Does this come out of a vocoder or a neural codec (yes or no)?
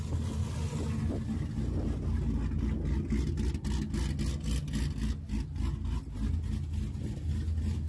no